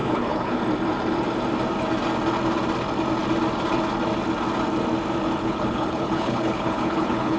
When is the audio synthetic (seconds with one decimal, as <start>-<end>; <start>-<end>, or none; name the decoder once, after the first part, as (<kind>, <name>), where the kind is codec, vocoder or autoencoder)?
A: 0.0-0.6 (codec, HILCodec); 5.4-7.4